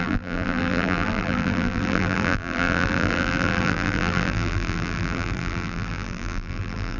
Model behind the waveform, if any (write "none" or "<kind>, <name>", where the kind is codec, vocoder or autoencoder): vocoder, BigVGAN v2